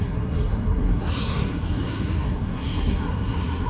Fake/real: fake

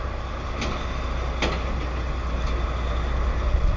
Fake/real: real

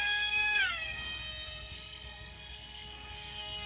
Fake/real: fake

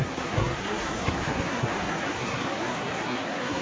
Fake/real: fake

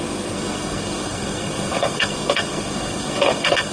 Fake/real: fake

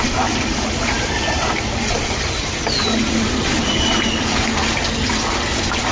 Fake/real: real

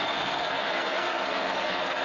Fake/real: fake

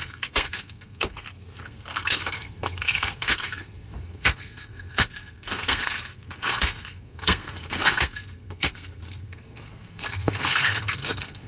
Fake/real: fake